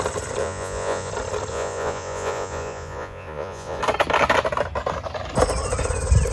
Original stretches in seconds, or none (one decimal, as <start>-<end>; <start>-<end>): 0.0-0.4; 1.1-1.5; 3.8-6.3